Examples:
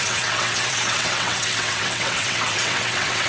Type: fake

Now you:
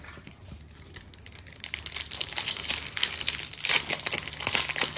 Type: real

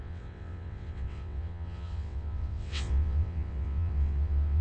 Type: fake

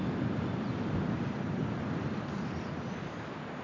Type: real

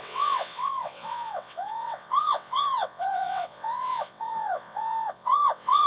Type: fake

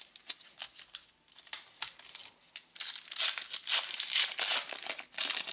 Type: real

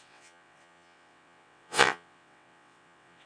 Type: fake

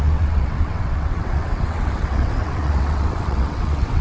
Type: fake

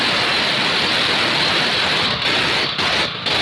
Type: real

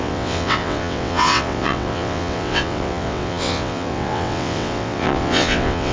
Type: fake